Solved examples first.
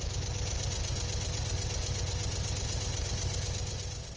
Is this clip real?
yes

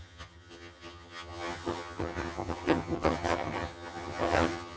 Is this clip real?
no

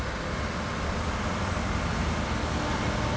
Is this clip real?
yes